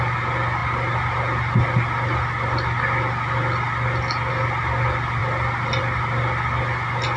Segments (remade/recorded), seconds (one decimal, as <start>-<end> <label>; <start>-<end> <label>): 0.0-7.2 recorded